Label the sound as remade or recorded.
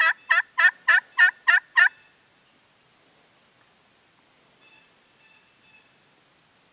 recorded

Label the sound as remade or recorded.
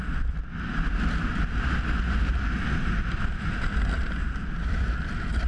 recorded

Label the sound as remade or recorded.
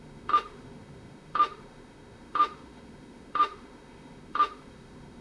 remade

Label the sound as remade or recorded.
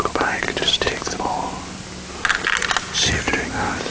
recorded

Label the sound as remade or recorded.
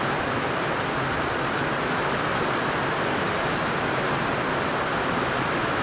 remade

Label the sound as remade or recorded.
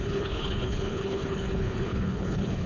remade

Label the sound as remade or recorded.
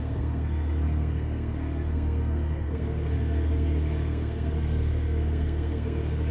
remade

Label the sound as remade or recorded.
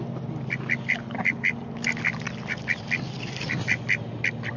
recorded